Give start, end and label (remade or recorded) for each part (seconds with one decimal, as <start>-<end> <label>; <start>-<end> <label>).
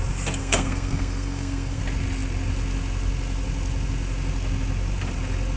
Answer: 0.0-0.4 recorded; 0.4-1.8 remade; 1.8-5.6 recorded